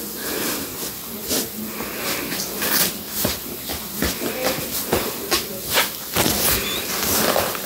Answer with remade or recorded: recorded